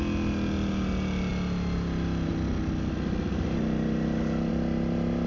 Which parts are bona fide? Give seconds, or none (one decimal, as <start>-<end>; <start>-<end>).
0.0-5.3